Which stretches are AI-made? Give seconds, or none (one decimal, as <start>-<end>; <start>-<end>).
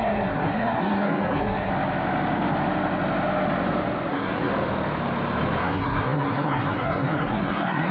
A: 0.0-1.7; 4.1-4.5; 5.6-7.9